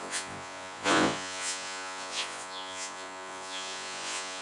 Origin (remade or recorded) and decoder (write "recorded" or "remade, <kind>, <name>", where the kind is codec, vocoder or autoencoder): remade, vocoder, Vocos